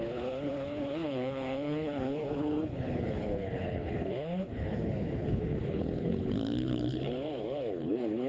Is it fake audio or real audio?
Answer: fake